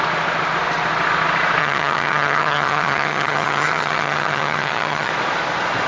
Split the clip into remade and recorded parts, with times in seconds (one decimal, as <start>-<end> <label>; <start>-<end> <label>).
0.0-1.6 recorded; 1.6-5.1 remade; 5.1-5.9 recorded